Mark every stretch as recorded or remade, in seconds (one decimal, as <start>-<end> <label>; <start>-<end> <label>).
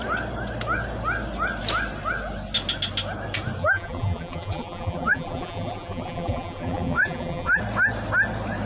0.0-3.6 recorded; 3.6-7.6 remade; 7.6-8.7 recorded